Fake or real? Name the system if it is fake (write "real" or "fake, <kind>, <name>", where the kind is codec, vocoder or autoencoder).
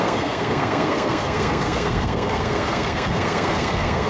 fake, codec, SNAC